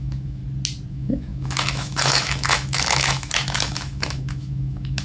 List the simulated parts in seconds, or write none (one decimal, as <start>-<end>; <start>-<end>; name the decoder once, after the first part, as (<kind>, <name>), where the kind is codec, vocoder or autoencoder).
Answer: 0.0-0.4 (autoencoder, DAC-VAE); 0.9-5.0